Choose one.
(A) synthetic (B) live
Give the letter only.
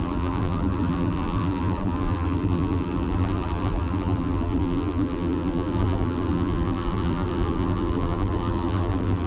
A